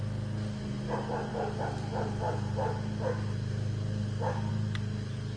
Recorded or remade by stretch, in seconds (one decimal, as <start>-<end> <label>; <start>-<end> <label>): 0.0-5.4 recorded